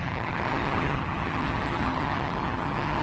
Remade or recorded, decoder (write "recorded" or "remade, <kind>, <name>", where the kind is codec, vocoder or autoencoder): remade, vocoder, HiFi-GAN